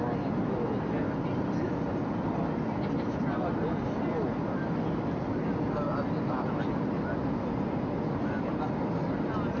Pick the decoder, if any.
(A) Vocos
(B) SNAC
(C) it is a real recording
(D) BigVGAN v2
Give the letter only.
C